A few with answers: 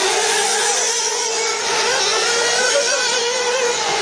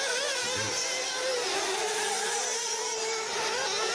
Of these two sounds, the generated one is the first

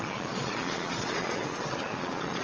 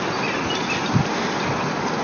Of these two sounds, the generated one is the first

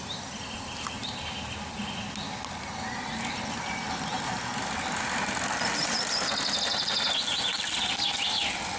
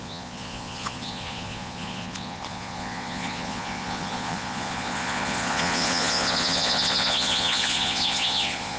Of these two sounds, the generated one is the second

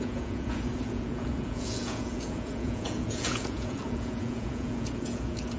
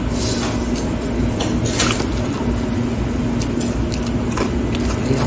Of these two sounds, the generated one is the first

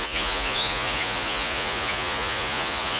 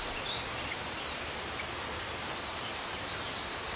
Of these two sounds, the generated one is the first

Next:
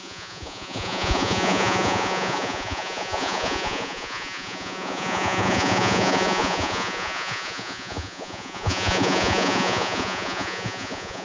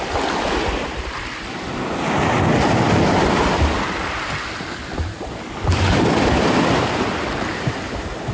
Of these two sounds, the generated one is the first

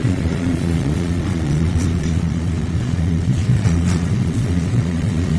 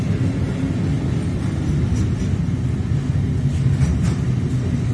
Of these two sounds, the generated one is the first